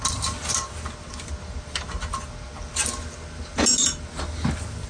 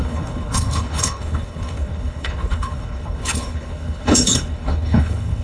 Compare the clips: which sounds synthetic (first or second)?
second